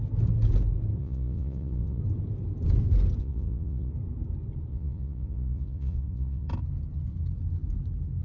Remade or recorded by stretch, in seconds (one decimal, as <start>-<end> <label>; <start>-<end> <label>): 0.0-1.0 recorded; 1.0-2.0 remade; 2.0-3.2 recorded; 3.2-3.9 remade; 3.9-4.7 recorded; 4.7-6.5 remade; 6.5-8.2 recorded